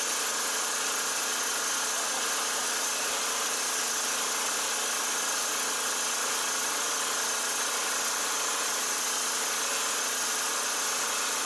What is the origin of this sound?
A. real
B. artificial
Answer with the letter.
A